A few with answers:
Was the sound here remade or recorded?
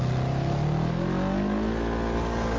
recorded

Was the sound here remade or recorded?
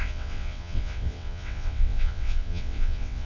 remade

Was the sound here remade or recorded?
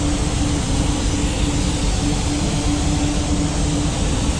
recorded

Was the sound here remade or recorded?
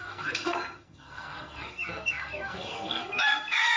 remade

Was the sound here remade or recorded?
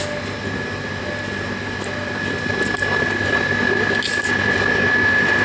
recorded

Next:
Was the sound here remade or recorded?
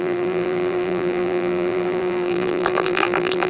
remade